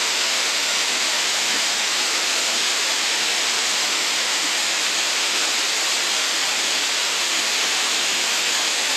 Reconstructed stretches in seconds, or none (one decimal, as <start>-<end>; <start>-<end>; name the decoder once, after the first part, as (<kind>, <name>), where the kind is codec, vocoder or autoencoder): 0.0-5.5 (autoencoder, DAC-VAE); 6.1-9.0